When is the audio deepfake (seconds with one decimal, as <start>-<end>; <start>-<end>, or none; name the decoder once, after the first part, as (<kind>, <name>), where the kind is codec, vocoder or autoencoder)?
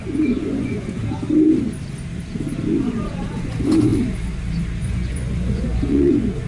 0.0-1.0 (vocoder, Vocos); 3.4-3.9; 4.8-6.5